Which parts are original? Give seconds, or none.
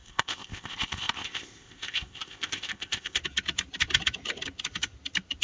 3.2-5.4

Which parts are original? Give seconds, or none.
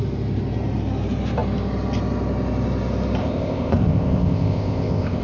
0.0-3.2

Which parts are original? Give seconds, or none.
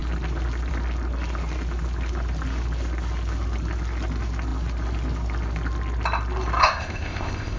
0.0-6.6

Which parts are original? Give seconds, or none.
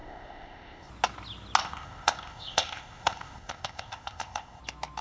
0.9-1.6; 4.6-5.0